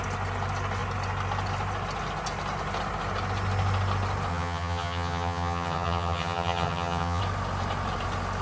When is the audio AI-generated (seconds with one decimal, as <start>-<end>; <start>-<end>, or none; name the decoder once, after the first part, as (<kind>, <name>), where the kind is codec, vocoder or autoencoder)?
4.3-7.2 (vocoder, HiFi-GAN)